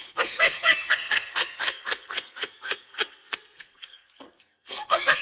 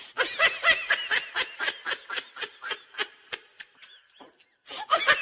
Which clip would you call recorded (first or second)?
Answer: second